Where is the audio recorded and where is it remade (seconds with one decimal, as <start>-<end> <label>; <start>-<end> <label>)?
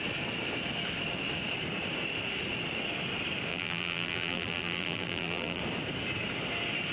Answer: 0.0-3.5 recorded; 3.5-5.6 remade; 5.6-6.9 recorded